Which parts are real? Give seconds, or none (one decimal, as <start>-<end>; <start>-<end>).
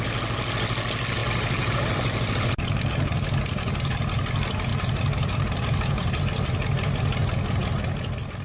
0.0-1.2; 2.9-4.7; 6.2-8.4